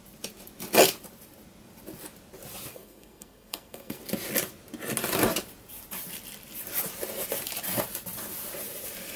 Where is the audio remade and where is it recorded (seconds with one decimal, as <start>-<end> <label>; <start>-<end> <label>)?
0.0-2.7 recorded; 2.7-4.0 remade; 4.0-9.2 recorded